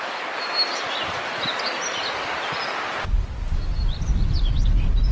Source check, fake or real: real